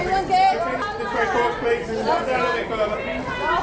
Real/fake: real